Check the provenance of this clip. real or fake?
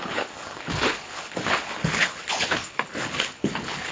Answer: fake